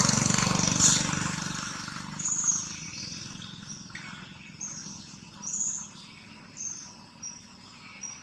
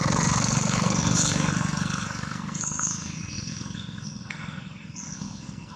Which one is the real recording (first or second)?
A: first